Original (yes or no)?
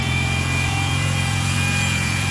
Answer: no